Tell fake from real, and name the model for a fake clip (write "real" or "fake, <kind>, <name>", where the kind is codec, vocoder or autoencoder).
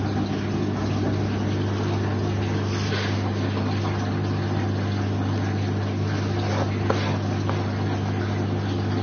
real